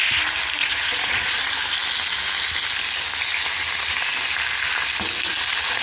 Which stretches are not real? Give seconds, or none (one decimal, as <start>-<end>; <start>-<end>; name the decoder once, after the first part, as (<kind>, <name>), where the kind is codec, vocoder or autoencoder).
0.6-1.5 (vocoder, Vocos)